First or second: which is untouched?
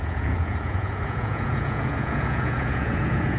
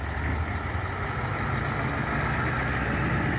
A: second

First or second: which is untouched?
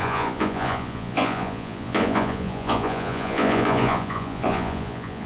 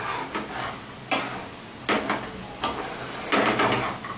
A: second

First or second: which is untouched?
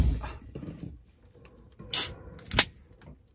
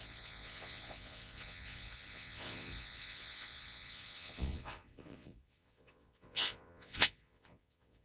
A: first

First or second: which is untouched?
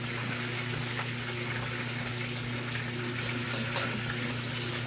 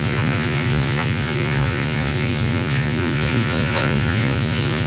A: first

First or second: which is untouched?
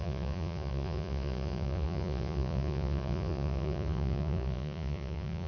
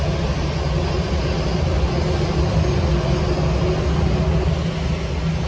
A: second